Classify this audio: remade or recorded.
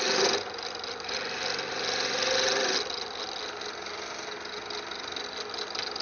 recorded